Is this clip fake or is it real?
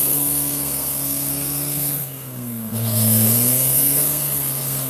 fake